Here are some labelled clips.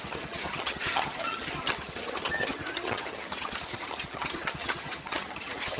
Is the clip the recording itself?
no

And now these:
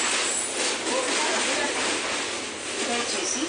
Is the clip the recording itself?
yes